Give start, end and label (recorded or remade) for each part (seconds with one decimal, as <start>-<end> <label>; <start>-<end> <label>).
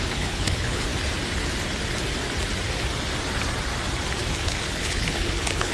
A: 0.0-0.9 remade; 0.9-4.3 recorded; 4.3-5.7 remade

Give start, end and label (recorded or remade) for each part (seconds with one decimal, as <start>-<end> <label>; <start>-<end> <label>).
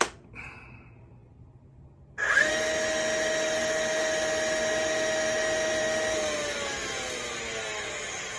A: 0.0-8.4 recorded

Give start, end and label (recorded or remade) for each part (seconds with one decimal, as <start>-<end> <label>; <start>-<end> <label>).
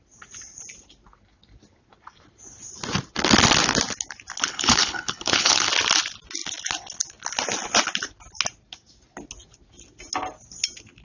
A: 0.0-4.5 recorded; 4.5-5.7 remade; 5.7-11.0 recorded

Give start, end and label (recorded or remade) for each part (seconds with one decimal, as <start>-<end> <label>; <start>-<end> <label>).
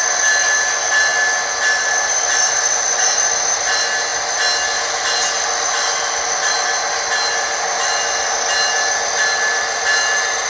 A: 0.0-10.5 recorded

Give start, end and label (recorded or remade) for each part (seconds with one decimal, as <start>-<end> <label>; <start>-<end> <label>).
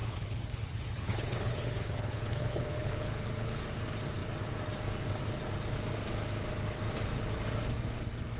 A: 0.0-3.6 remade; 3.6-8.4 recorded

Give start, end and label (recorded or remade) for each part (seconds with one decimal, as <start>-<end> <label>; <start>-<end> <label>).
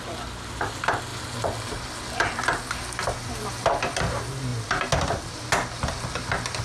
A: 0.0-6.6 recorded